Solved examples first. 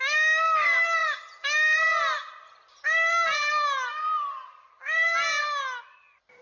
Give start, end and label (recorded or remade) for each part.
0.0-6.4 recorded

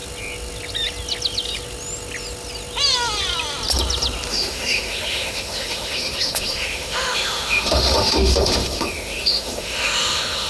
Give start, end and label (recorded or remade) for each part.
0.0-4.3 recorded; 4.3-10.5 remade